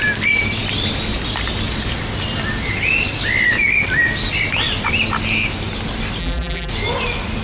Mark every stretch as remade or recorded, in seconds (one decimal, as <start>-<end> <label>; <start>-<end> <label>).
0.0-6.2 recorded; 6.2-6.7 remade; 6.7-7.4 recorded